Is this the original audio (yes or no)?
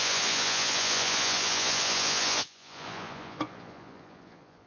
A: no